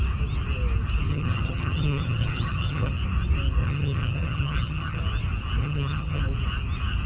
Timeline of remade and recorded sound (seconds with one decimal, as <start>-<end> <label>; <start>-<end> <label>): 0.0-1.1 recorded; 1.1-2.9 remade; 2.9-3.6 recorded; 3.6-5.0 remade; 5.0-5.6 recorded; 5.6-6.2 remade; 6.2-7.1 recorded